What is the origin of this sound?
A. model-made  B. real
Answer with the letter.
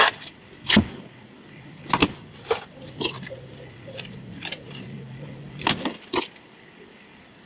A